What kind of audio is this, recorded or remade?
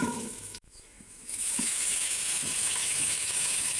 remade